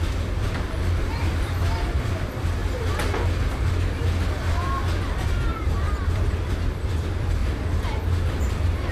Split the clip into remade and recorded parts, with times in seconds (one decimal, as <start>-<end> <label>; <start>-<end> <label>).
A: 0.0-2.6 remade; 2.6-5.1 recorded; 5.1-7.4 remade; 7.4-8.4 recorded; 8.4-8.9 remade